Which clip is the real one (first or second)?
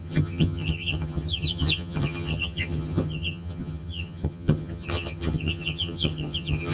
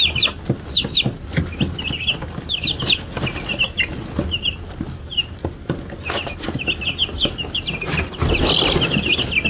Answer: second